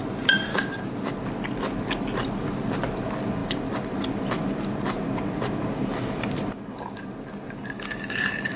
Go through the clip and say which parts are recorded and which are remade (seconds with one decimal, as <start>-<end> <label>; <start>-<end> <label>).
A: 0.0-0.5 recorded; 0.5-1.1 remade; 1.1-7.3 recorded; 7.3-8.6 remade